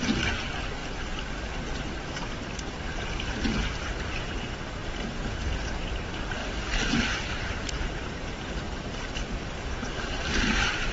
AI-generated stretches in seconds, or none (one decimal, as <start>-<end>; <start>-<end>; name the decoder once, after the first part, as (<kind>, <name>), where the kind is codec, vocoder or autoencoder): 0.0-0.8 (vocoder, BigVGAN v2); 1.7-6.4; 7.2-10.9